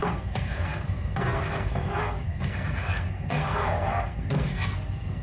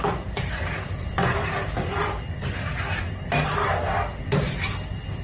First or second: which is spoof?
first